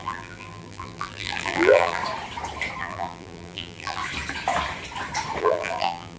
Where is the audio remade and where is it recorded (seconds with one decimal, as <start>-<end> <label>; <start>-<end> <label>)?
0.0-2.0 remade; 2.0-2.8 recorded; 2.8-4.0 remade; 4.0-5.4 recorded; 5.4-6.2 remade